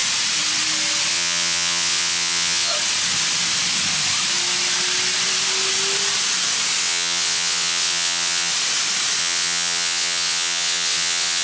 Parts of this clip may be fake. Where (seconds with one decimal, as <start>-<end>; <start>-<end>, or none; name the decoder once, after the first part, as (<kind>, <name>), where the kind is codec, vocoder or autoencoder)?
1.1-2.7 (vocoder, WaveNeXt); 6.8-8.5; 9.2-11.4